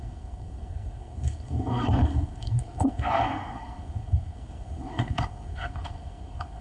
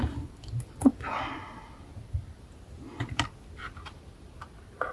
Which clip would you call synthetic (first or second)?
first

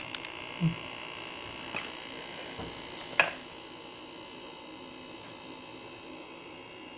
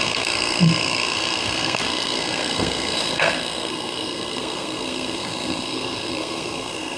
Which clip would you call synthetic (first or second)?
second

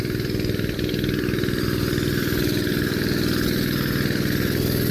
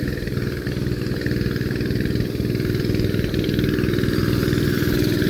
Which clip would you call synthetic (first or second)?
second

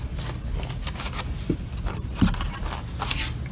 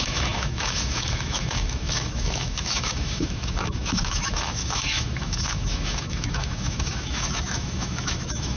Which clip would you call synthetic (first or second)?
second